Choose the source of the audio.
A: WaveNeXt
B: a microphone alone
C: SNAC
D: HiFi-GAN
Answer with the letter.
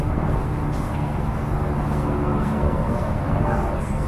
C